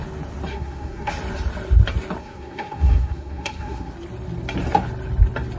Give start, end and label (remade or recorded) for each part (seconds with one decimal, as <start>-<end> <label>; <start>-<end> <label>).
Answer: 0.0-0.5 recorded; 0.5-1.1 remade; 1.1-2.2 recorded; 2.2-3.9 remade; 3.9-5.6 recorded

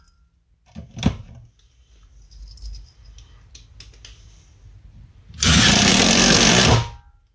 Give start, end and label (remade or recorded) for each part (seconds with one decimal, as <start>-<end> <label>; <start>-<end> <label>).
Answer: 0.0-5.9 recorded; 5.9-6.5 remade; 6.5-7.3 recorded

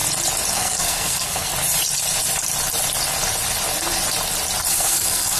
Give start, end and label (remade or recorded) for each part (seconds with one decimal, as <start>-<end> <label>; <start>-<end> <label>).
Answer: 0.0-0.5 recorded; 0.5-1.5 remade; 1.5-4.7 recorded; 4.7-5.4 remade

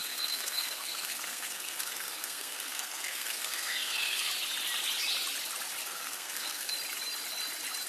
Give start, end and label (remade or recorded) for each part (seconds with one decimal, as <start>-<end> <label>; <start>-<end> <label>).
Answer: 0.0-4.3 remade; 4.3-5.8 recorded; 5.8-6.7 remade; 6.7-7.9 recorded

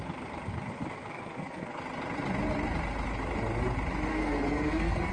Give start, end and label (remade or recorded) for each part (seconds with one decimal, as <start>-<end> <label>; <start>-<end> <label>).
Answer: 0.0-1.1 recorded; 1.1-1.8 remade; 1.8-4.1 recorded; 4.1-5.1 remade

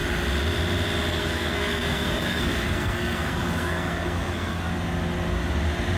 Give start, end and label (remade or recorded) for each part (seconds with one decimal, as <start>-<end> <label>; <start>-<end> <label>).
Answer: 0.0-1.1 recorded; 1.1-4.7 remade; 4.7-6.0 recorded